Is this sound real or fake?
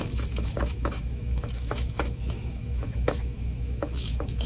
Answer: fake